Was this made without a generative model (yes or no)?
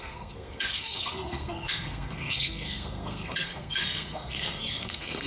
no